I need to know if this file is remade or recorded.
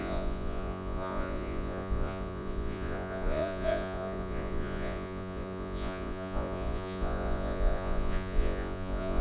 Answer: remade